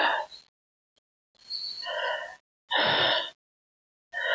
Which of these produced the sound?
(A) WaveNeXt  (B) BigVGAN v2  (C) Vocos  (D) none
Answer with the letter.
D